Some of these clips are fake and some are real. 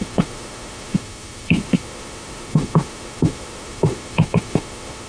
fake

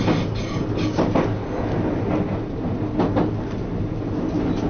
real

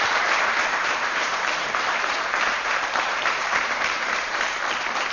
fake